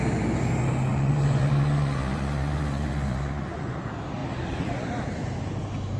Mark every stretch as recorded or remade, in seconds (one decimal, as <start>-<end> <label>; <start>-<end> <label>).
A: 0.0-0.9 recorded; 0.9-3.8 remade; 3.8-6.0 recorded